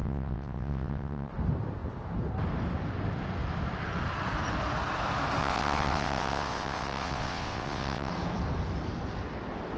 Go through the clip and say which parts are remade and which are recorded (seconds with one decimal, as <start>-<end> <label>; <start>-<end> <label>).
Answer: 0.0-1.3 remade; 1.3-5.4 recorded; 5.4-8.1 remade; 8.1-9.8 recorded